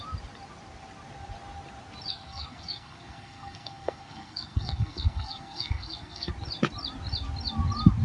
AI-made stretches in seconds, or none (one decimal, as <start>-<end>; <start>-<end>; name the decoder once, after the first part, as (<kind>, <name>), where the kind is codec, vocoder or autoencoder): 2.1-6.3 (codec, SNAC)

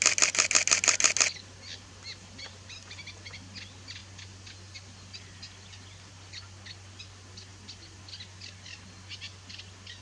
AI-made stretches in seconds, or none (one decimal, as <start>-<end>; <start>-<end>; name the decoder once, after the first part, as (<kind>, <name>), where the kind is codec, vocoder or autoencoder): none

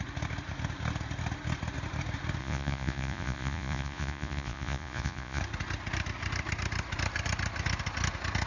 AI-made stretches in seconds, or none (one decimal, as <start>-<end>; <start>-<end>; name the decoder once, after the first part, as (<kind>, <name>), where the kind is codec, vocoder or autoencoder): 2.4-5.4 (vocoder, Vocos)

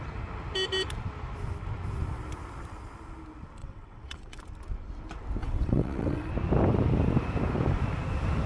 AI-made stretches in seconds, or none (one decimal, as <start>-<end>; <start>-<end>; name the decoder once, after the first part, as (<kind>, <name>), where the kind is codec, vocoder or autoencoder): 3.6-4.4 (vocoder, WaveNeXt); 5.4-6.3